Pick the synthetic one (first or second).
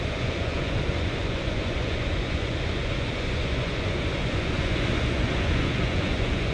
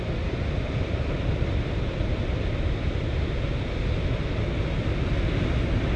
first